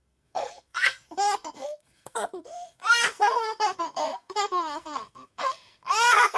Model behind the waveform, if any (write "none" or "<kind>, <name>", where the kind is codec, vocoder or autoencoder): codec, SNAC